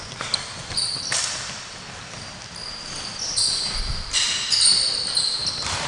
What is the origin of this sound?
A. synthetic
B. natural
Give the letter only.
B